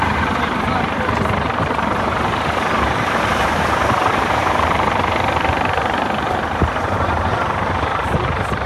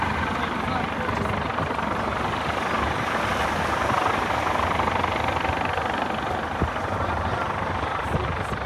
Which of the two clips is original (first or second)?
second